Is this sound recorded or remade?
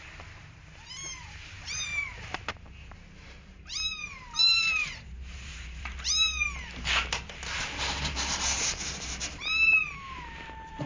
remade